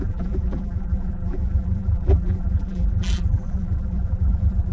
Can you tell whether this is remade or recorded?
remade